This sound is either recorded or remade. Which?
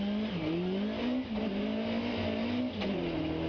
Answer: recorded